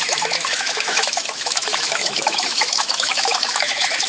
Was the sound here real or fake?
fake